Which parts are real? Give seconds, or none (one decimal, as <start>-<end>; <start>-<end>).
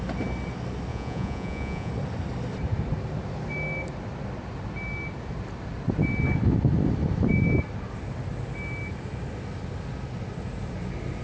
0.0-0.9; 1.9-11.2